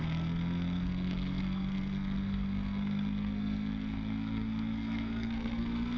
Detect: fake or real fake